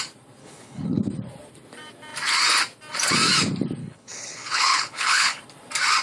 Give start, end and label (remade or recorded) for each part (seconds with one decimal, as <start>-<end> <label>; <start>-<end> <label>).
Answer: 0.0-0.4 recorded; 0.4-1.0 remade; 1.0-3.8 recorded; 3.8-5.4 remade; 5.4-6.0 recorded